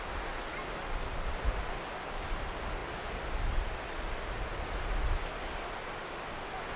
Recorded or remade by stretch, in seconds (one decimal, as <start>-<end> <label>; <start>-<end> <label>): 0.0-6.8 recorded

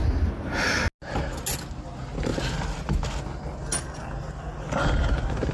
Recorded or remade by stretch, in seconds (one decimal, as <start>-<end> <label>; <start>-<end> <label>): 0.0-5.5 recorded

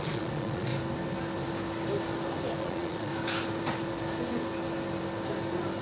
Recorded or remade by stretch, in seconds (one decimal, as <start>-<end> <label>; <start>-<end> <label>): 0.0-0.7 remade; 0.7-2.6 recorded; 2.6-3.1 remade; 3.1-5.8 recorded

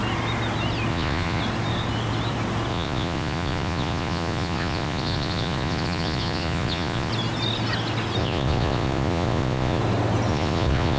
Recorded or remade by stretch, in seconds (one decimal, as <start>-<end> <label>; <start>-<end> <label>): 0.0-0.9 recorded; 0.9-1.4 remade; 1.4-2.7 recorded; 2.7-7.1 remade; 7.1-8.2 recorded; 8.2-9.8 remade; 9.8-10.3 recorded; 10.3-11.0 remade

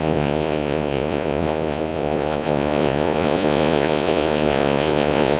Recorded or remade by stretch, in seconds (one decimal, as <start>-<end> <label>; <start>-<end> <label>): 0.0-5.4 remade

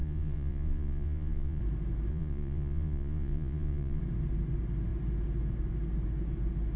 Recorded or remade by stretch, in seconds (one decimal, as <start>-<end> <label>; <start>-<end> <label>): 0.0-1.6 remade; 1.6-2.1 recorded; 2.1-4.0 remade; 4.0-6.8 recorded

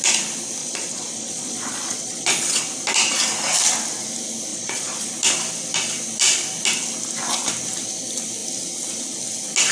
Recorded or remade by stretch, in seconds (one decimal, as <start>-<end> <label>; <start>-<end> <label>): 0.0-0.6 recorded; 0.6-2.6 remade; 2.6-4.5 recorded; 4.5-5.1 remade; 5.1-9.7 recorded